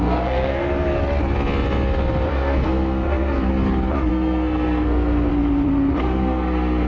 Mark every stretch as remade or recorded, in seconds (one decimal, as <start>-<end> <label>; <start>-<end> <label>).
0.0-1.0 remade; 1.0-2.3 recorded; 2.3-3.5 remade; 3.5-4.1 recorded; 4.1-5.3 remade; 5.3-6.0 recorded; 6.0-6.9 remade